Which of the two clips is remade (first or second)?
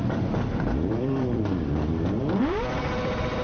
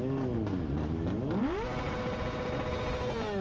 first